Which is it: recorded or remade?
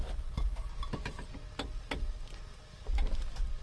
recorded